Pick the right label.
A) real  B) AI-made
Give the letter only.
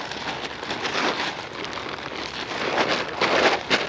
A